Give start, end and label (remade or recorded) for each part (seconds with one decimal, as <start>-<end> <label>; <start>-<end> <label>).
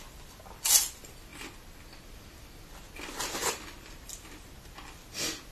0.0-5.5 recorded